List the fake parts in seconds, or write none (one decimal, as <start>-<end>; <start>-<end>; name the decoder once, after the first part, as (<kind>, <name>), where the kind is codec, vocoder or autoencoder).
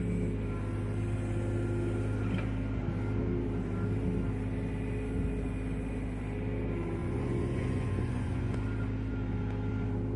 7.0-8.6 (vocoder, Vocos)